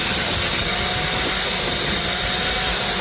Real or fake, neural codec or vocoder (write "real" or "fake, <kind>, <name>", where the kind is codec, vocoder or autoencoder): real